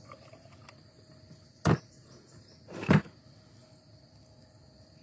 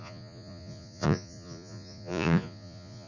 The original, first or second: first